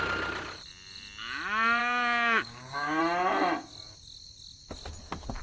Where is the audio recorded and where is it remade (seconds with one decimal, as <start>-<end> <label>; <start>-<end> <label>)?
0.0-1.8 recorded; 1.8-3.0 remade; 3.0-5.4 recorded